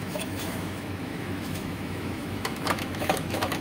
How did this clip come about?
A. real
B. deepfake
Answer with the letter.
B